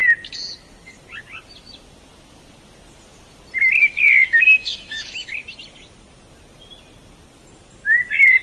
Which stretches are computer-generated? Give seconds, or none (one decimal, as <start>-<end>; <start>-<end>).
3.8-5.3